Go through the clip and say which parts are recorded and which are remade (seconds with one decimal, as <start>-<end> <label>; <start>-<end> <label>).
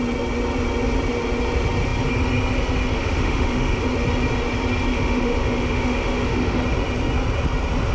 0.0-2.9 recorded; 2.9-3.8 remade; 3.8-4.9 recorded; 4.9-6.6 remade; 6.6-7.9 recorded